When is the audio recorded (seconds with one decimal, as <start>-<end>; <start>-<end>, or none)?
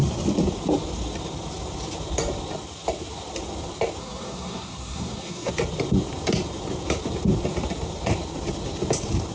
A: 0.0-4.0; 5.5-9.3